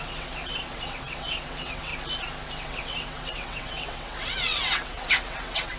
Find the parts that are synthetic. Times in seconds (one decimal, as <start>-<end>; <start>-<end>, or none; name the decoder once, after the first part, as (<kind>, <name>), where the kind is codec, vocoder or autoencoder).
0.0-1.9 (vocoder, WaveNeXt); 2.6-5.8